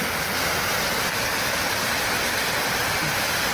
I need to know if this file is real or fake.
real